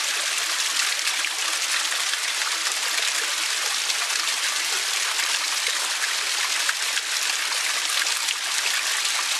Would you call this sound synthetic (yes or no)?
no